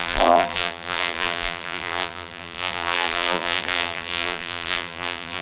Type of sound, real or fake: fake